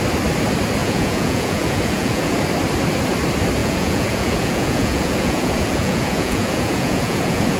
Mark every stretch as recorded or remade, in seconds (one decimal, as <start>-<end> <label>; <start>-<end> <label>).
0.0-0.8 recorded; 0.8-2.4 remade; 2.4-3.6 recorded; 3.6-7.6 remade